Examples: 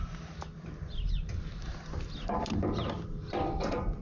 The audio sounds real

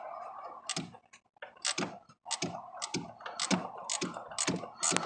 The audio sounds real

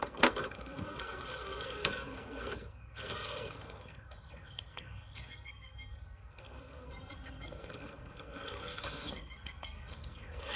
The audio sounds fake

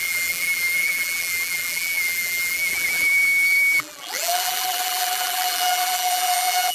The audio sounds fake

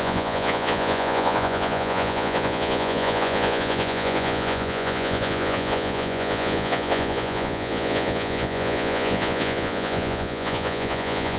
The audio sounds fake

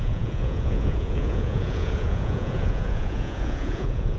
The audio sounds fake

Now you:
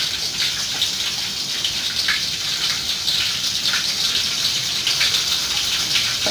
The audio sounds fake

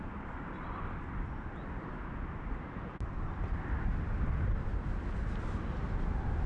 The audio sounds real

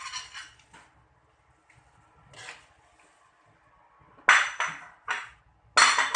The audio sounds real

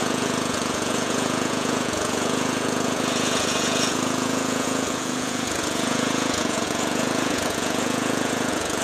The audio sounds fake